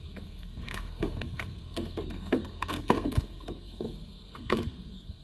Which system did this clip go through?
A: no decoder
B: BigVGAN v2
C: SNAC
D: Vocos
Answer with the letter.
C